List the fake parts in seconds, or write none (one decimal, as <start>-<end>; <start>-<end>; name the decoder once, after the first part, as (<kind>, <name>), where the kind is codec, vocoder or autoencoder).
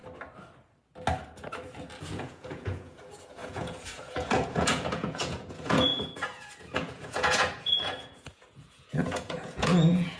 2.0-10.2 (vocoder, Vocos)